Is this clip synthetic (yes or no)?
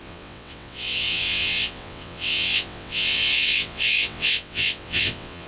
yes